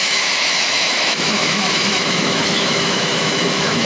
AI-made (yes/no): yes